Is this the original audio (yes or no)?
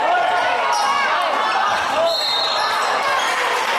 yes